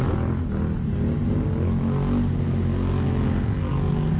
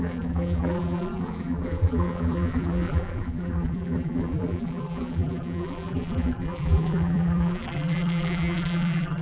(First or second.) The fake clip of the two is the second